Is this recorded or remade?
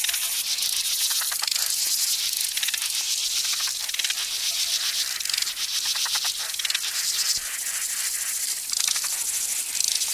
remade